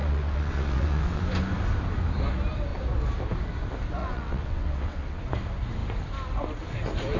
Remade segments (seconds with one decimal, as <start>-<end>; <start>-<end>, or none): 0.0-1.2; 4.0-5.2

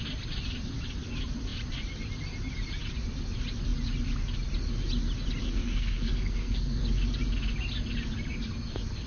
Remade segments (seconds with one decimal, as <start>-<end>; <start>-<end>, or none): 5.4-6.8

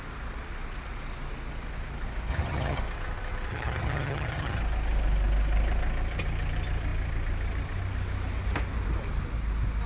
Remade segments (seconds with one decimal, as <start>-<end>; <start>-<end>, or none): 2.3-2.8; 3.5-4.6

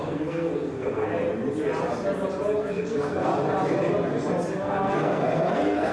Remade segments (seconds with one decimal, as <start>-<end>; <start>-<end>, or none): 0.0-1.1; 2.6-3.3; 4.6-5.9

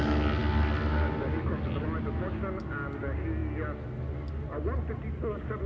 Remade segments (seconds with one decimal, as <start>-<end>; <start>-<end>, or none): none

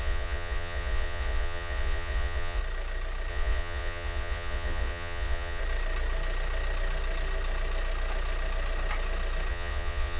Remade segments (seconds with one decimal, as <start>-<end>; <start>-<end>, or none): 0.0-2.6; 3.3-5.6; 9.5-10.2

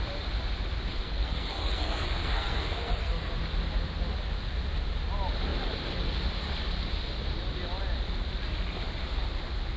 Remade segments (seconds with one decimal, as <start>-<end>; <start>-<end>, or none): 0.9-3.3